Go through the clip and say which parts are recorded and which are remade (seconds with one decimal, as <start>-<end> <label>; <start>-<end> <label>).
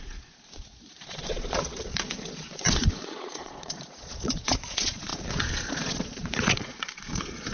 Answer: 0.0-7.5 remade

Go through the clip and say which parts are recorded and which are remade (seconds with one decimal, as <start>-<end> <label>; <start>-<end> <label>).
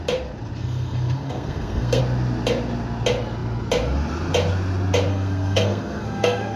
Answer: 0.0-0.6 recorded; 0.6-2.0 remade; 2.0-5.1 recorded; 5.1-6.6 remade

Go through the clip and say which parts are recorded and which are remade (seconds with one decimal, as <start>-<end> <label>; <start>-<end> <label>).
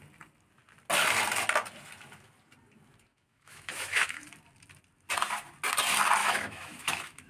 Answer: 0.0-3.1 recorded; 3.1-4.2 remade; 4.2-6.2 recorded; 6.2-7.3 remade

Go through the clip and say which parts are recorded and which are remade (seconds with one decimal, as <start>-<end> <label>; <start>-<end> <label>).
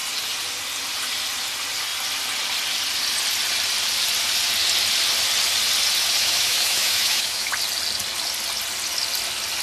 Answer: 0.0-6.2 recorded; 6.2-7.5 remade; 7.5-9.6 recorded